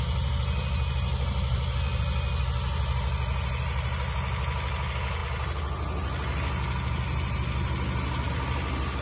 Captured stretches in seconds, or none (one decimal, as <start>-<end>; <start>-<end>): 0.0-9.0